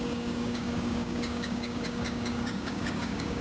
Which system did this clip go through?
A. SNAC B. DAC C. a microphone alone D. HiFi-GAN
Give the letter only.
B